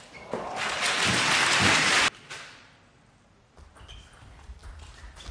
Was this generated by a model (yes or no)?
no